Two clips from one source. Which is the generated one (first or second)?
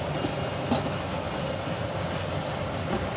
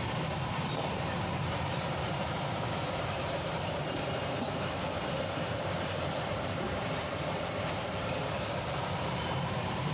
second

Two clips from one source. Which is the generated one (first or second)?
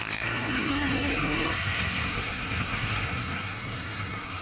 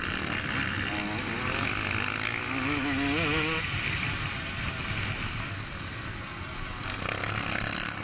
first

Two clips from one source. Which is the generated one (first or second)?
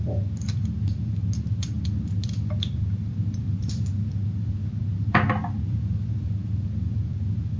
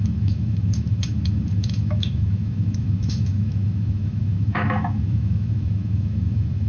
second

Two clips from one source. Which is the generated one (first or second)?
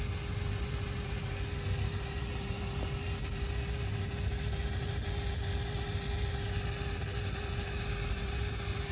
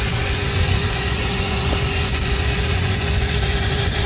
second